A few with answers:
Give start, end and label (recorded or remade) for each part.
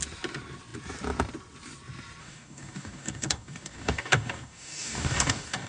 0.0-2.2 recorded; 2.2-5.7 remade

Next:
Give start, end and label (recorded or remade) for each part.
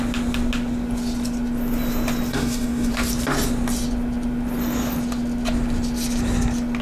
0.0-2.3 recorded; 2.3-2.9 remade; 2.9-6.8 recorded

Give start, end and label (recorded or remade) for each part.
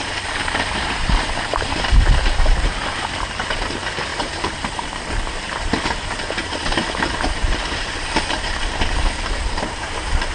0.0-10.3 remade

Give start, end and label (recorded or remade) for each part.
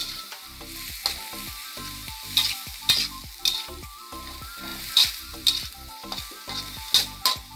0.0-4.7 recorded; 4.7-5.7 remade; 5.7-7.6 recorded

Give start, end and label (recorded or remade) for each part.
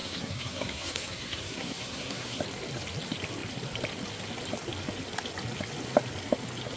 0.0-2.4 remade; 2.4-6.8 recorded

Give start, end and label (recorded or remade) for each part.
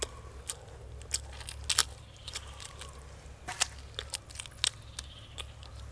0.0-5.9 recorded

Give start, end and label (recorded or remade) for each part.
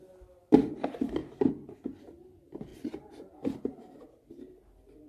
0.0-5.1 recorded